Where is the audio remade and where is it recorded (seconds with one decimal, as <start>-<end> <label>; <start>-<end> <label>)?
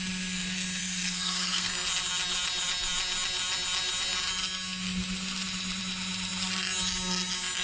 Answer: 0.0-0.8 recorded; 0.8-1.7 remade; 1.7-7.6 recorded